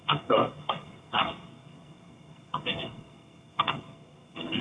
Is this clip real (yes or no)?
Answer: no